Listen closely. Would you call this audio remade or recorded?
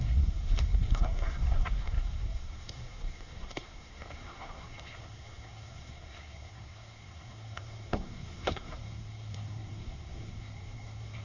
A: remade